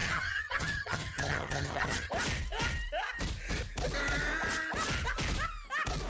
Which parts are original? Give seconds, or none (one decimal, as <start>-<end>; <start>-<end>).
2.1-6.1

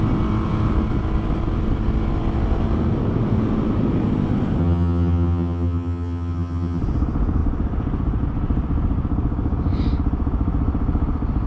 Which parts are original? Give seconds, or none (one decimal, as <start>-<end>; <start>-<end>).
0.0-4.6; 6.8-11.5

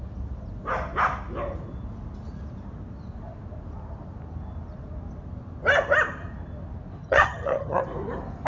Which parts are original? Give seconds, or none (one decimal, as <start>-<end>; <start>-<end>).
0.0-7.0; 7.8-8.5

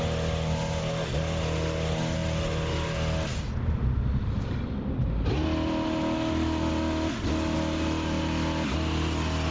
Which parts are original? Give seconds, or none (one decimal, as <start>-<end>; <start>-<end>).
0.0-9.5

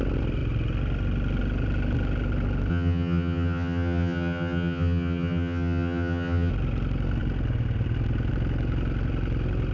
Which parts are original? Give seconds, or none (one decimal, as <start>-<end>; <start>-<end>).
0.0-2.7; 6.5-9.7

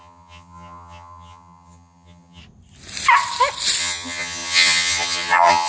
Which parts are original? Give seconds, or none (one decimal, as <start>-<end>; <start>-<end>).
2.4-3.8

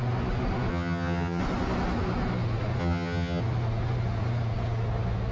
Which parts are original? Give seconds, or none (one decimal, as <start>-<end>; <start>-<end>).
0.0-0.7; 1.4-2.8; 3.4-5.3

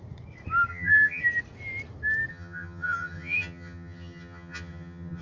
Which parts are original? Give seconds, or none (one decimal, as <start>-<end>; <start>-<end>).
0.0-0.7; 1.2-2.3